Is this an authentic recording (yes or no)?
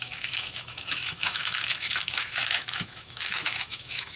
no